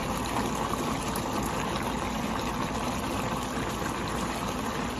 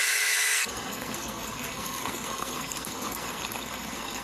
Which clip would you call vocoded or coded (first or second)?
second